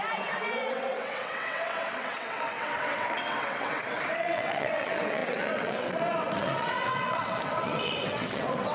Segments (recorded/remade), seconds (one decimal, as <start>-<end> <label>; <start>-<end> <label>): 0.0-8.7 remade